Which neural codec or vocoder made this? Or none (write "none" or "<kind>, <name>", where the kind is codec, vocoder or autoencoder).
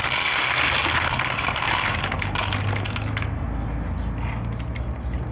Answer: none